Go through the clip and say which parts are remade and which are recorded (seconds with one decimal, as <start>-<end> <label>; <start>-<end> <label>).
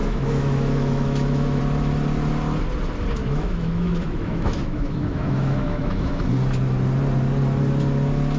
0.0-1.6 remade; 1.6-3.2 recorded; 3.2-6.2 remade; 6.2-8.4 recorded